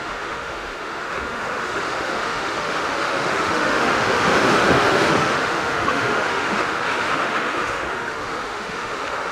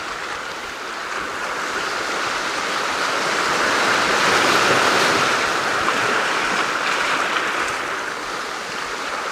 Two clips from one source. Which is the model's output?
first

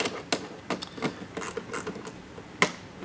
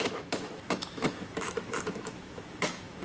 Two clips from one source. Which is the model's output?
second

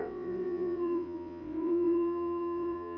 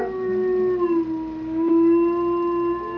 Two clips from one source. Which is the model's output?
first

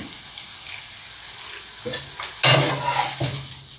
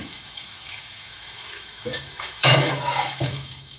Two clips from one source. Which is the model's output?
second